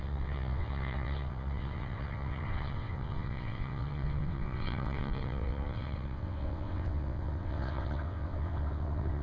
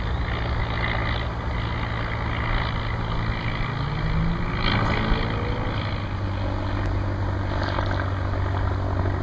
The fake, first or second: first